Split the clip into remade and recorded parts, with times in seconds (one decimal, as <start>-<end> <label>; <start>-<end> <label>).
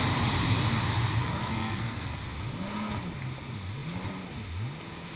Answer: 0.0-1.2 recorded; 1.2-2.2 remade; 2.2-5.2 recorded